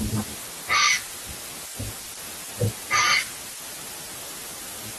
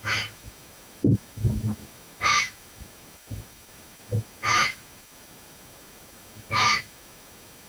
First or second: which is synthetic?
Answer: second